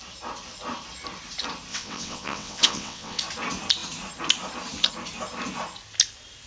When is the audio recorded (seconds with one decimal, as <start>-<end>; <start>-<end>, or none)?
0.0-1.7; 3.2-6.5